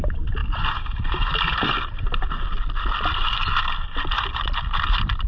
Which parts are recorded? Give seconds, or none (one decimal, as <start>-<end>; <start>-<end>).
0.0-5.3

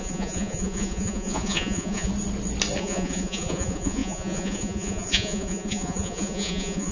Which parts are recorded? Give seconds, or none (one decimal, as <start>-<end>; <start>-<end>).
2.1-2.8

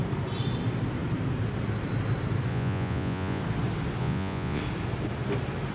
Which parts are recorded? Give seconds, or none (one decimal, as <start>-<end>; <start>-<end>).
0.0-2.5; 3.4-4.0; 4.6-5.7